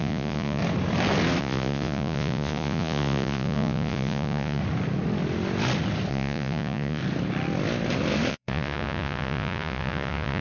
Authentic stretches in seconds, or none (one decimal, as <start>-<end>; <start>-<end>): 0.6-1.4; 4.6-6.1; 7.0-8.3